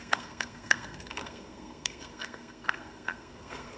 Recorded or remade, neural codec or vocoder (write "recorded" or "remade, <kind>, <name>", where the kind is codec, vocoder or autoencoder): remade, codec, SNAC